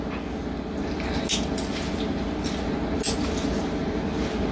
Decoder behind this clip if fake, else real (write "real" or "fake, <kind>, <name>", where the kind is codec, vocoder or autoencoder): real